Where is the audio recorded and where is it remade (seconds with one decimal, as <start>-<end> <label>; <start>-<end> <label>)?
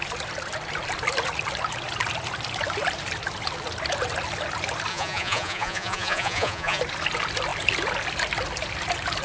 0.0-4.9 recorded; 4.9-6.8 remade; 6.8-9.2 recorded